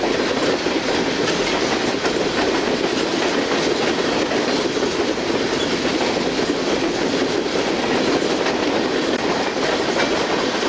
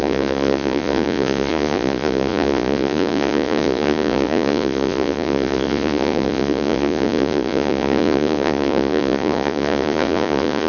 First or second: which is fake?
second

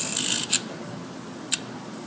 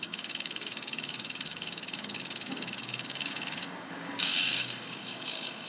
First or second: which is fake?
second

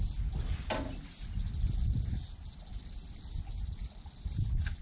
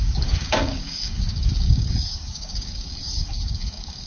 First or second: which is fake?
second